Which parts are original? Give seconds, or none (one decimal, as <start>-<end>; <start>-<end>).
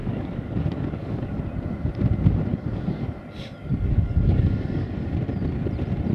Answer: 1.4-2.5; 3.0-3.6; 4.9-6.1